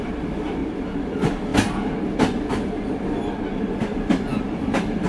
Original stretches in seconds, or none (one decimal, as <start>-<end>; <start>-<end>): 0.6-1.1; 1.5-3.3